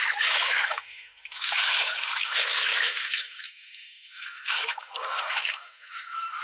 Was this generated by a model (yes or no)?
yes